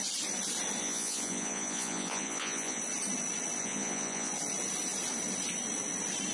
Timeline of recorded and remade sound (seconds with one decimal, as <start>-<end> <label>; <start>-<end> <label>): 0.0-0.8 recorded; 0.8-2.8 remade; 2.8-3.6 recorded; 3.6-4.3 remade; 4.3-6.3 recorded

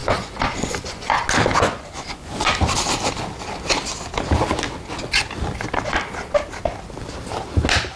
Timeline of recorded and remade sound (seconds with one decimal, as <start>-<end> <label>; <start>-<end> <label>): 0.0-1.1 remade; 1.1-1.5 recorded; 1.5-2.6 remade; 2.6-8.0 recorded

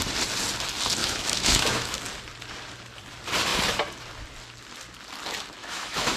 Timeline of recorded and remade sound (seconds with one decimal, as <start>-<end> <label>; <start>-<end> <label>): 0.0-1.0 recorded; 1.0-2.0 remade; 2.0-5.6 recorded; 5.6-6.2 remade

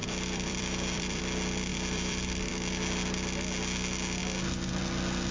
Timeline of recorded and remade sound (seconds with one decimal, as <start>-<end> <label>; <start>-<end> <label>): 0.0-1.2 remade; 1.2-1.7 recorded; 1.7-2.5 remade; 2.5-5.3 recorded